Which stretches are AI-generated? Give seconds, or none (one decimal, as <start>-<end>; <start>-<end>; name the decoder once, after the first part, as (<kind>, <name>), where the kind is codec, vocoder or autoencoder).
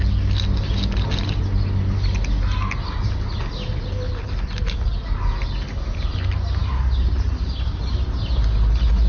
none